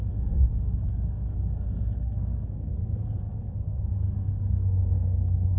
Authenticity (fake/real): fake